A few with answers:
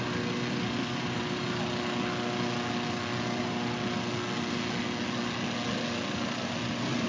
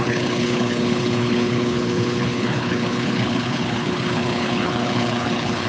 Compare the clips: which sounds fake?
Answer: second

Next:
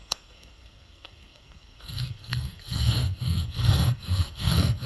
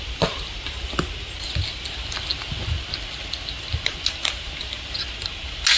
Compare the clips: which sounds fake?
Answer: first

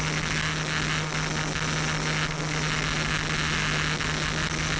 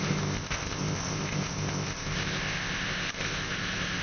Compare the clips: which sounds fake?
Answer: second